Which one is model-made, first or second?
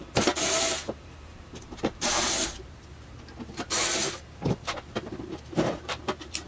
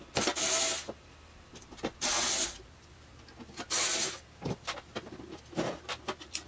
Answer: first